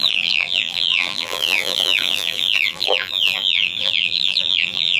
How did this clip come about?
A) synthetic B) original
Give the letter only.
A